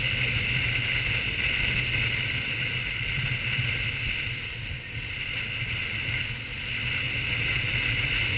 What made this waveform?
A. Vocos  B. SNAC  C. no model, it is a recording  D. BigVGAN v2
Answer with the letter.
C